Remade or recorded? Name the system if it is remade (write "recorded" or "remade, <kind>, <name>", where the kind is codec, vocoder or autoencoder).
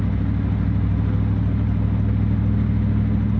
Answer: recorded